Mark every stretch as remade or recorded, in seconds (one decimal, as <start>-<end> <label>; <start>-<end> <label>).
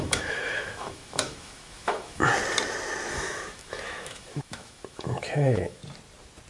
0.0-2.3 remade; 2.3-3.1 recorded; 3.1-5.8 remade; 5.8-6.5 recorded